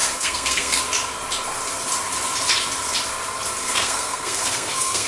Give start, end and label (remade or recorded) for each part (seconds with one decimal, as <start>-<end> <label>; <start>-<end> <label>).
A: 0.0-0.8 remade; 0.8-3.6 recorded; 3.6-5.1 remade